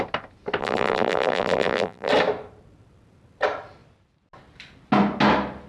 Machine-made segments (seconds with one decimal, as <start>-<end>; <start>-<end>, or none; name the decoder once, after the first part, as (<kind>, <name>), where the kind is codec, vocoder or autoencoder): 0.6-2.1 (vocoder, BigVGAN v2)